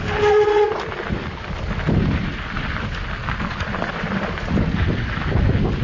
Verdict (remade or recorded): recorded